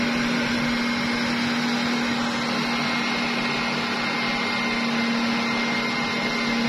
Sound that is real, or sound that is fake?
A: real